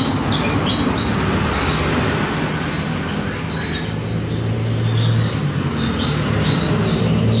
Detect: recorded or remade recorded